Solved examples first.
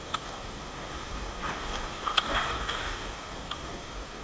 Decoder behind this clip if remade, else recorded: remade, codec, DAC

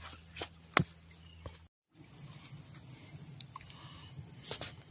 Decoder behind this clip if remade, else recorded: recorded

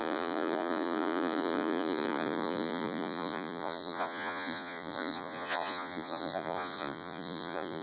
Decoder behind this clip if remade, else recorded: remade, vocoder, Vocos